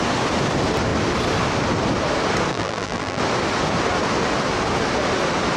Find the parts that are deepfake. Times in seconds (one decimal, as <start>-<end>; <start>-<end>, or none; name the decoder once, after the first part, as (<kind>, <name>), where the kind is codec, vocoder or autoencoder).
2.5-3.2 (vocoder, BigVGAN v2)